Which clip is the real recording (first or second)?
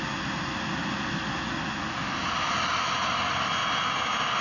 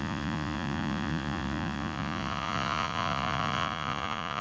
first